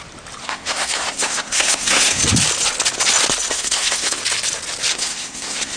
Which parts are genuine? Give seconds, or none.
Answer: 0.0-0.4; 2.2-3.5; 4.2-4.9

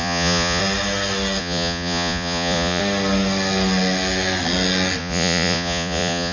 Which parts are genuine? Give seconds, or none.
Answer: 0.6-1.4; 2.8-5.0

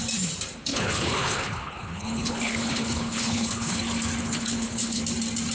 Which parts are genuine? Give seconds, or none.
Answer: 0.0-0.7; 3.8-4.2; 5.0-5.5

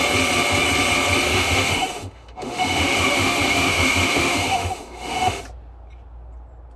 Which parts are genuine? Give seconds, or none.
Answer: 0.0-1.3; 5.4-6.8

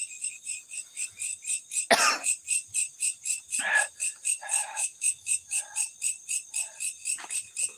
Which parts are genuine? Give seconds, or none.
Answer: 0.0-4.6; 5.6-7.8

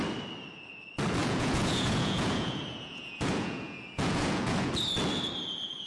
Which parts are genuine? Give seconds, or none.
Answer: 0.0-1.2; 4.7-5.9

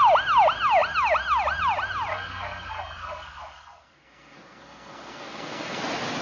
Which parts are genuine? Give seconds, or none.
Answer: 0.0-2.1; 5.8-6.2